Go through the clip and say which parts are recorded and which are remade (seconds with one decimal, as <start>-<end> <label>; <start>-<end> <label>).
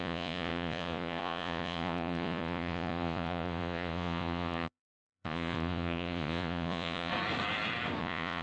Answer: 0.0-7.1 remade; 7.1-8.0 recorded; 8.0-8.4 remade